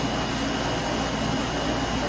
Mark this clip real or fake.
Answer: real